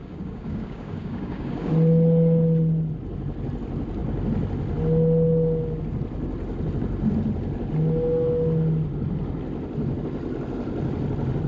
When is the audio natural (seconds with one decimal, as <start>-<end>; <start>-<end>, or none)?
1.7-11.5